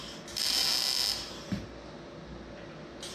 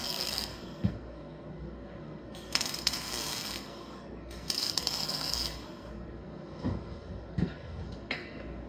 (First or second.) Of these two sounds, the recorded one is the first